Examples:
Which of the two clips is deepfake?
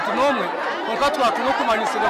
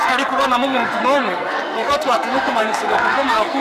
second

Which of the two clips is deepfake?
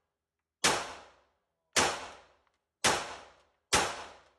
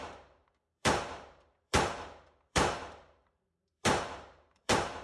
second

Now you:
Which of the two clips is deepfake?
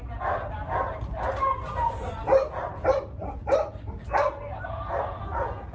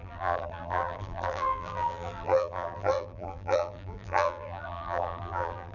second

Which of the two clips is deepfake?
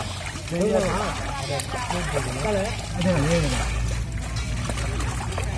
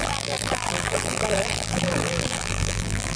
second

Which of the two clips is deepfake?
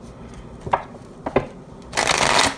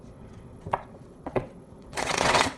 second